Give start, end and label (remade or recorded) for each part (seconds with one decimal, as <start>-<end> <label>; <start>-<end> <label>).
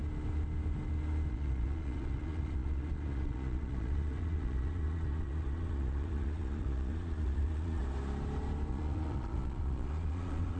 0.0-1.3 recorded; 1.3-7.8 remade; 7.8-8.7 recorded; 8.7-10.6 remade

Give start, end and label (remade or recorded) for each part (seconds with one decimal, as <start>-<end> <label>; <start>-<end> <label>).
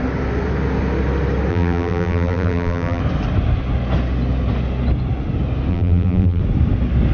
0.0-1.5 recorded; 1.5-3.0 remade; 3.0-5.7 recorded; 5.7-6.4 remade; 6.4-7.1 recorded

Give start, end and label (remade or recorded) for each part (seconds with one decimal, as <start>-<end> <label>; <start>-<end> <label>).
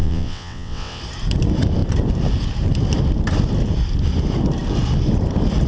0.0-1.0 remade; 1.0-5.7 recorded